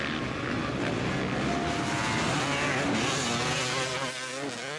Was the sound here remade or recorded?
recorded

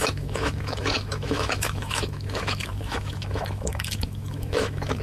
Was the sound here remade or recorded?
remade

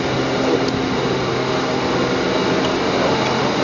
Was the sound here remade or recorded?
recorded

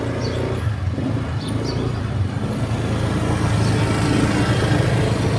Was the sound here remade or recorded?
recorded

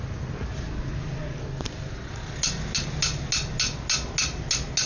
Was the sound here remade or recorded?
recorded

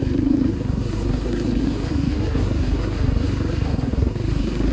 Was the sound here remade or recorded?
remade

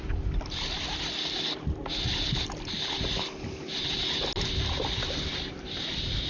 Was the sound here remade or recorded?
recorded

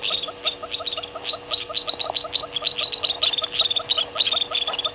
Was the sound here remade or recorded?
recorded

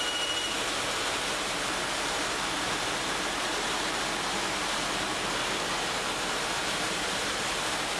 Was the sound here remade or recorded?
recorded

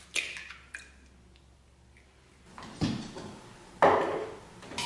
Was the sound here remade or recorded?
recorded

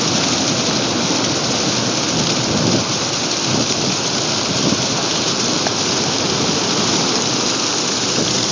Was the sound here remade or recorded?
recorded